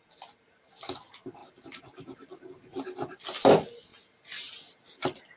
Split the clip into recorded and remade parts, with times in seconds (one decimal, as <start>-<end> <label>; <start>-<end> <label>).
0.0-5.4 recorded